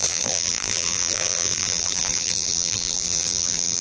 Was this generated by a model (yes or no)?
yes